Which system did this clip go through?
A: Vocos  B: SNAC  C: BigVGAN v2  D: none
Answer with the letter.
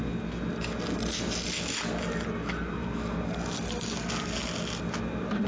D